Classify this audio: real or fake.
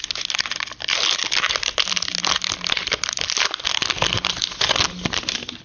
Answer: real